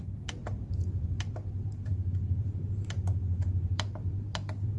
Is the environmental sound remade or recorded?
remade